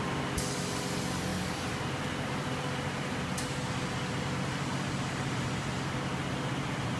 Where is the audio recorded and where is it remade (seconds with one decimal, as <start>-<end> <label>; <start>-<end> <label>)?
0.0-7.0 recorded